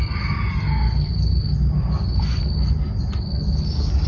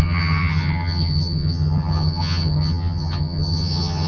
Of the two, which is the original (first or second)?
first